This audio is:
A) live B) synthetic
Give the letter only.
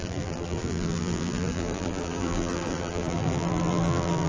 B